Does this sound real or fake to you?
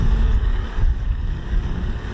fake